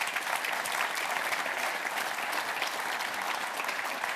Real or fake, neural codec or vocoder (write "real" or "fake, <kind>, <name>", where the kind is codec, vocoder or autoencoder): real